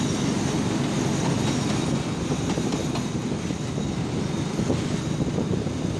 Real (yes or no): yes